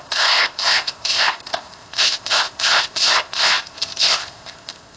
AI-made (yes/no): yes